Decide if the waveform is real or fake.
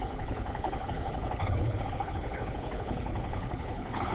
fake